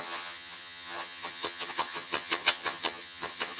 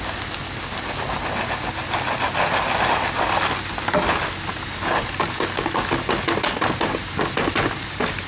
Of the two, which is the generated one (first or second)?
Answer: first